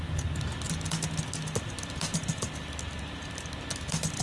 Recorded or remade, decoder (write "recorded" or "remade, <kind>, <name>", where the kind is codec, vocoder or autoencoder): recorded